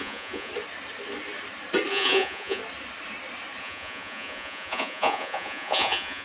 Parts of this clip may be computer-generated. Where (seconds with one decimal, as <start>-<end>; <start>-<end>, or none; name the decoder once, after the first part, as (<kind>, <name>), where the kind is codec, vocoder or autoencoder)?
0.0-0.5 (vocoder, Vocos); 1.9-2.6; 3.6-6.2